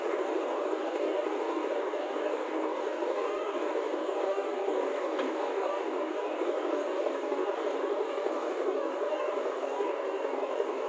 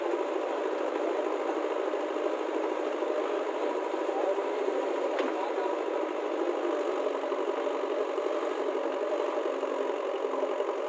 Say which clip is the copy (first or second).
first